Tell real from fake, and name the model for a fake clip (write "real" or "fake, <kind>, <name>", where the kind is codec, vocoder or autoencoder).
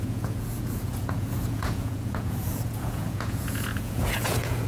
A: fake, vocoder, Vocos